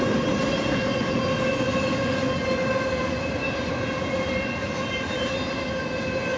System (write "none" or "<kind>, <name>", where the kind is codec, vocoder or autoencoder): none